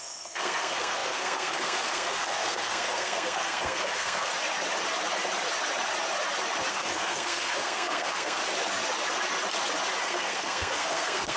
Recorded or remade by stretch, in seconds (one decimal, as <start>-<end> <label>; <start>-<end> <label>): 0.0-4.3 remade; 4.3-6.7 recorded; 6.7-8.4 remade; 8.4-10.0 recorded; 10.0-11.4 remade